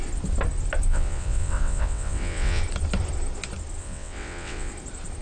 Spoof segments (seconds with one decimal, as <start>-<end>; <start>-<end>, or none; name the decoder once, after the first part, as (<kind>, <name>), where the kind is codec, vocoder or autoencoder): 0.9-2.6 (vocoder, WaveNeXt); 3.8-4.7